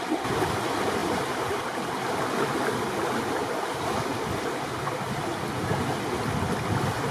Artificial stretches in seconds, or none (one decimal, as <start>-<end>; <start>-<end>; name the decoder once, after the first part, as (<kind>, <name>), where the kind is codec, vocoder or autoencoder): 1.0-2.0 (vocoder, BigVGAN v2)